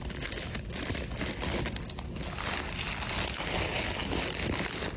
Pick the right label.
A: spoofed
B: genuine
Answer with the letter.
B